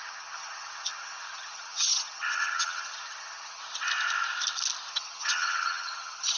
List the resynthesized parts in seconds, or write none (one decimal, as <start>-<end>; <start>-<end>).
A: 0.0-3.6; 4.9-6.4